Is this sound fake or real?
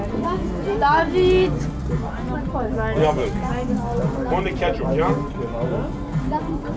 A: real